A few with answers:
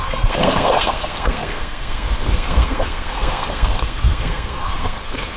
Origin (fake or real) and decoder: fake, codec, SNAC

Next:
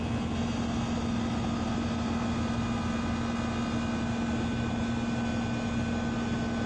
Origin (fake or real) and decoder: real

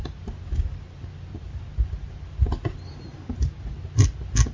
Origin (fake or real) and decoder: real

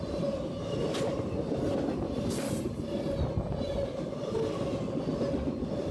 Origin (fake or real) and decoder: real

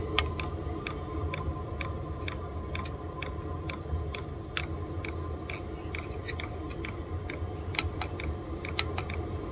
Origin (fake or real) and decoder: real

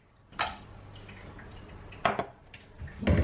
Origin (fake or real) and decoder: real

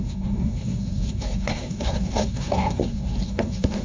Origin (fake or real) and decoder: fake, codec, SNAC